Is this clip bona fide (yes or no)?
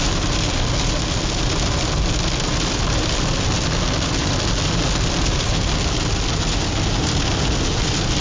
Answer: yes